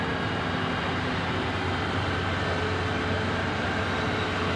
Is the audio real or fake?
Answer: real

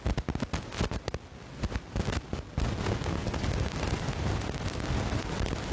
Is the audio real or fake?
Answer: real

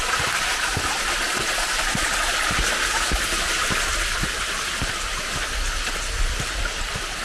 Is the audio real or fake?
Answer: real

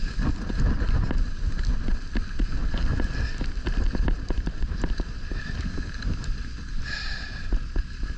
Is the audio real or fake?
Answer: real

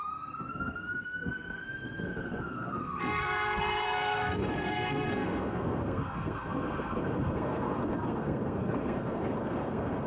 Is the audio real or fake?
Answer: fake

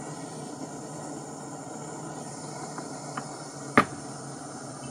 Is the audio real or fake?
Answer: real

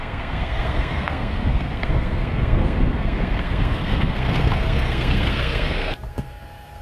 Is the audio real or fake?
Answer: fake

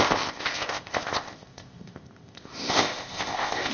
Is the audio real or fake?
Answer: fake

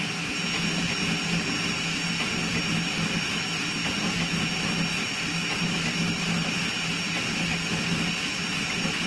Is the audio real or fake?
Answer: real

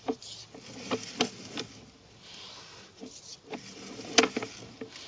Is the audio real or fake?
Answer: real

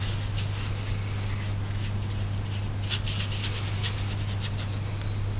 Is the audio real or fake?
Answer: real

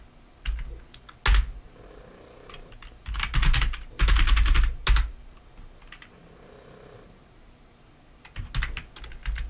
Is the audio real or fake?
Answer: real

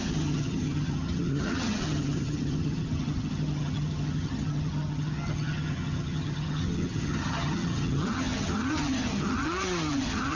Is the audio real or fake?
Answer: fake